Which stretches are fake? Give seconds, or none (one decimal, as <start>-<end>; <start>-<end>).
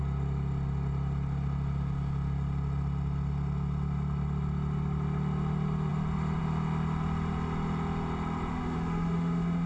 8.5-9.7